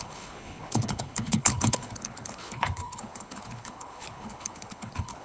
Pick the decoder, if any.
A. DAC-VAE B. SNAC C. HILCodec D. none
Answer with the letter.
C